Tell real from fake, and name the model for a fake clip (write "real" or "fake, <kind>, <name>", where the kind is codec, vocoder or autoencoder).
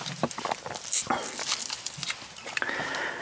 real